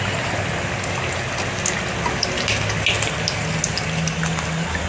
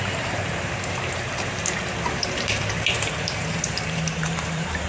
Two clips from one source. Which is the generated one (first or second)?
second